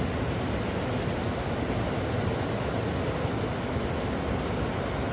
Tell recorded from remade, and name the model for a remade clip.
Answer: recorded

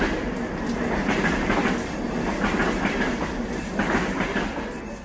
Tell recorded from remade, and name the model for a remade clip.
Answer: recorded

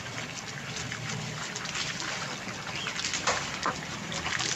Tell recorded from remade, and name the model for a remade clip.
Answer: recorded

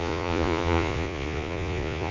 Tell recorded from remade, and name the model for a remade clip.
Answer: remade, vocoder, Vocos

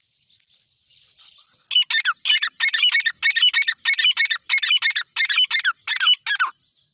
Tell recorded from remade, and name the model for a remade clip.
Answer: recorded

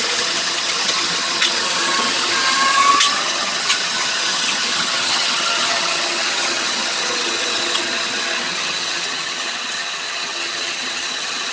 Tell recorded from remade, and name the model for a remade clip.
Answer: remade, vocoder, HiFi-GAN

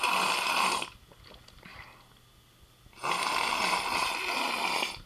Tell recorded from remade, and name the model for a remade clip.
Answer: recorded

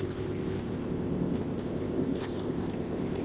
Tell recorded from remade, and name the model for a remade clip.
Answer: remade, codec, ZipCodec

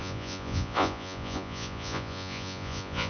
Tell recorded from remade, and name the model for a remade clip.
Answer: remade, vocoder, Vocos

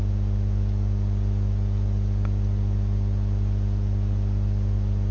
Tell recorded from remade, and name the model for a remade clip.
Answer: recorded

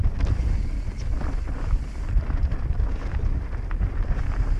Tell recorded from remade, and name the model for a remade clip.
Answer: recorded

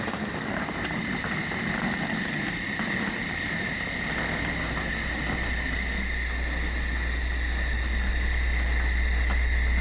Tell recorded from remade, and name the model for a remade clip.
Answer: recorded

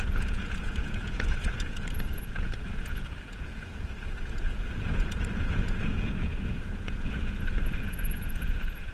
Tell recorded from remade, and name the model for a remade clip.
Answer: remade, vocoder, Vocos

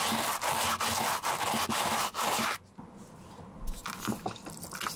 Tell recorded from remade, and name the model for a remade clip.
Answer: recorded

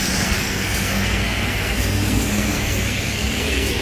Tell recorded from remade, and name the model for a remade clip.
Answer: remade, codec, SNAC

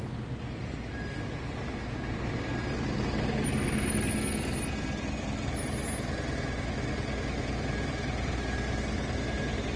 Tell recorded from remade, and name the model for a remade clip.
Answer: recorded